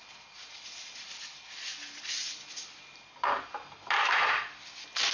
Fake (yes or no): no